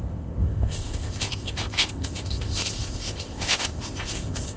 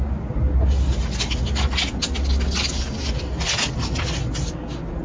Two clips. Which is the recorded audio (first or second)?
second